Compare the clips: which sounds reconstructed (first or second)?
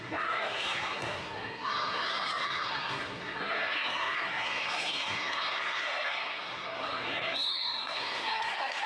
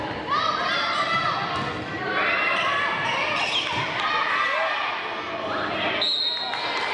first